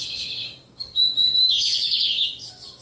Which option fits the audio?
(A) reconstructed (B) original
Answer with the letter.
A